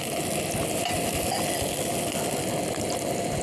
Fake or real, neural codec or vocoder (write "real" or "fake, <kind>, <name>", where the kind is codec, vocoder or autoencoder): real